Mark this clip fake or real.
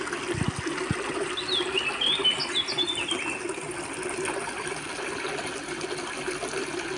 real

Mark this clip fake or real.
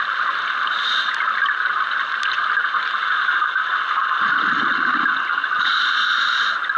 real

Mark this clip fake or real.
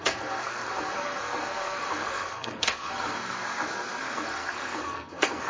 fake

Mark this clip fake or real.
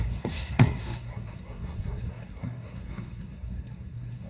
fake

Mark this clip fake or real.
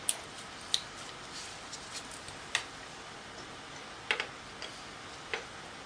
real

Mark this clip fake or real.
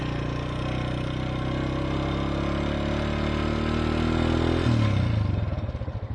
real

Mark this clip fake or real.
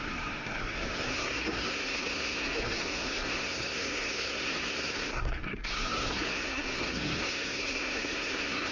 fake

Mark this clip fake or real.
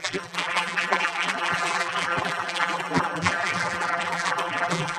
fake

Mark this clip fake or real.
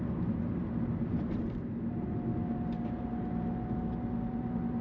real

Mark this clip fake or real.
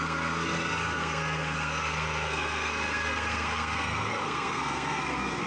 fake